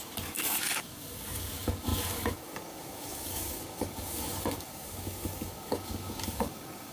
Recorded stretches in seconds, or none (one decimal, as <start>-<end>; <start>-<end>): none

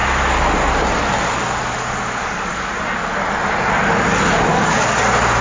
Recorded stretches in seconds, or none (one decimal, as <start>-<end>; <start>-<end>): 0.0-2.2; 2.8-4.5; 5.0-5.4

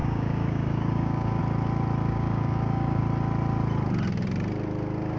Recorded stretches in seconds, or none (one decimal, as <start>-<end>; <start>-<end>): 1.4-2.1; 3.0-5.2

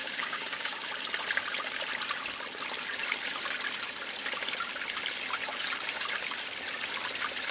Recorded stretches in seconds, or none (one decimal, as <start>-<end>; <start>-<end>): 0.9-7.5

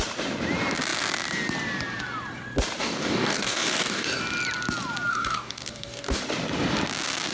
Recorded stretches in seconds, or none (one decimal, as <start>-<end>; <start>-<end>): 0.0-2.8; 4.2-5.1; 6.2-7.3

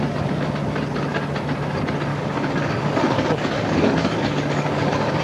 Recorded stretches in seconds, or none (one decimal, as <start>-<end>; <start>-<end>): 0.0-2.1

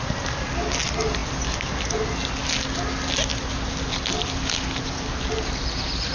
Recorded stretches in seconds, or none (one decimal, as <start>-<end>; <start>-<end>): 0.0-6.1

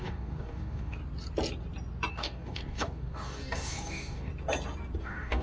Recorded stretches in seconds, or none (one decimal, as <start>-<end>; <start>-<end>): 1.0-2.1; 4.3-5.0